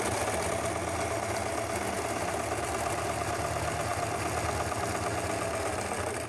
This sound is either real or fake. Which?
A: real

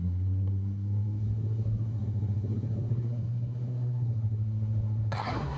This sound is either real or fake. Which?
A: fake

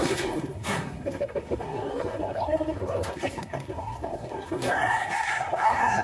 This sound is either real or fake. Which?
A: fake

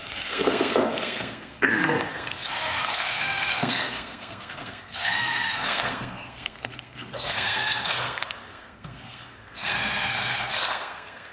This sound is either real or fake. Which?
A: fake